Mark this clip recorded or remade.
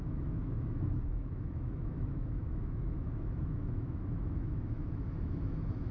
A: remade